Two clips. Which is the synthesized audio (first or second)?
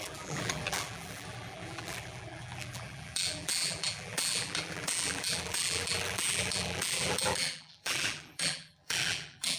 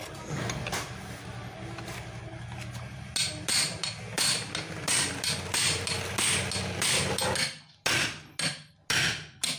first